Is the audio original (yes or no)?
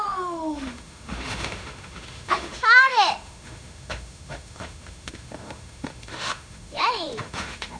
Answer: no